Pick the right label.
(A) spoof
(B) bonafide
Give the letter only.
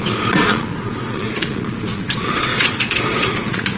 A